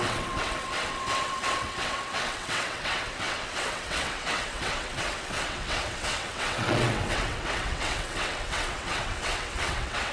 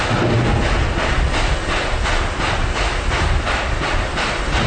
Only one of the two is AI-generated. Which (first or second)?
first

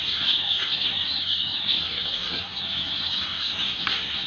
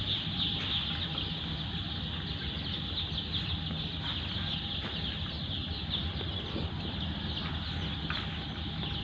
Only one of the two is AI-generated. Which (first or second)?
first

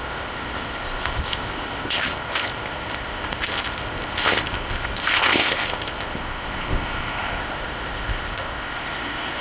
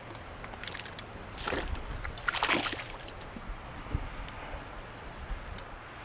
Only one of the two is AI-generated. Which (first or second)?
first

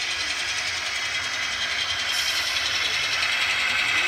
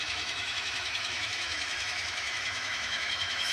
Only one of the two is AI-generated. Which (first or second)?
second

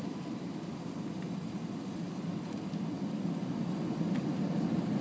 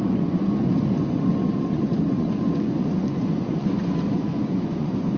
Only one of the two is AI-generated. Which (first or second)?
second